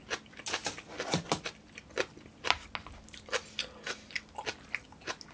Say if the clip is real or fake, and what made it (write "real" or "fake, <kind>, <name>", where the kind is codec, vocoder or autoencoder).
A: real